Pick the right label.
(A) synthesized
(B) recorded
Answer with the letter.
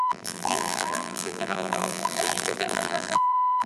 A